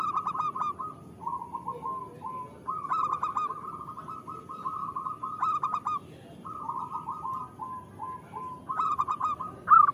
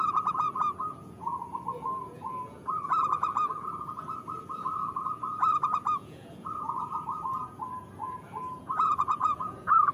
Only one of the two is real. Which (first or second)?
first